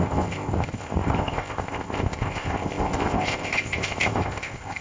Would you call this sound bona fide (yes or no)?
no